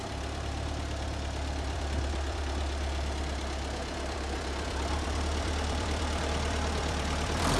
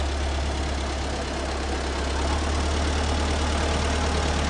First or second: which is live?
second